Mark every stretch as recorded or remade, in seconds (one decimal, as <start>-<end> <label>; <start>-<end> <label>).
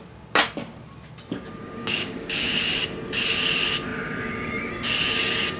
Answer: 0.0-1.6 recorded; 1.6-2.7 remade; 2.7-5.6 recorded